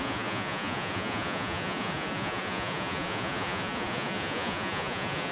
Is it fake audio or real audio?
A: fake